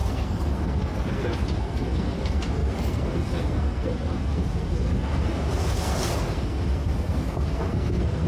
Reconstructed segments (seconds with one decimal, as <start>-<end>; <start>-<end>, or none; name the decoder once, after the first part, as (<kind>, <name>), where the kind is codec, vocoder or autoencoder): 0.0-8.3 (codec, SNAC)

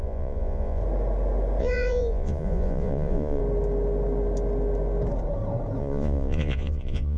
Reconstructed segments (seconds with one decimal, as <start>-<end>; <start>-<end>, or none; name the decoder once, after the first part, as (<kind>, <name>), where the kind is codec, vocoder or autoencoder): 0.0-0.8 (vocoder, Vocos); 1.6-3.4; 5.8-7.2

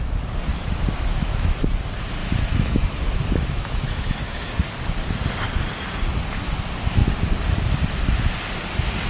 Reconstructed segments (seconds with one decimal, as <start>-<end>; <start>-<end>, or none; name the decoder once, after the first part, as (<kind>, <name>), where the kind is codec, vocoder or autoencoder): 0.5-1.6 (autoencoder, DAC-VAE); 2.2-4.5

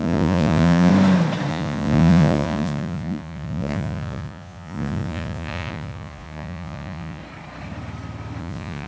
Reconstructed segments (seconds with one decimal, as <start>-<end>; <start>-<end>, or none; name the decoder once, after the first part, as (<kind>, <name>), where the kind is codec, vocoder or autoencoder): 0.0-0.9 (vocoder, Vocos); 1.5-7.2; 8.4-8.9